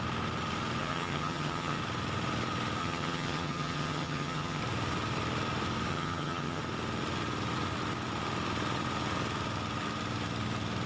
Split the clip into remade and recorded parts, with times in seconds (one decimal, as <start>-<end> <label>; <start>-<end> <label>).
0.0-0.8 recorded; 0.8-1.8 remade; 1.8-2.8 recorded; 2.8-4.6 remade; 4.6-5.9 recorded; 5.9-6.6 remade; 6.6-10.9 recorded